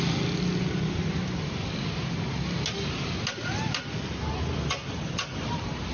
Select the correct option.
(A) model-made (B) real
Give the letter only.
B